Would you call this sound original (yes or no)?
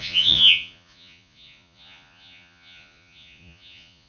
no